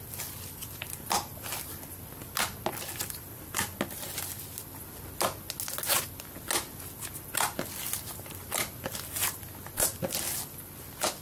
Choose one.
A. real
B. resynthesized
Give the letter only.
A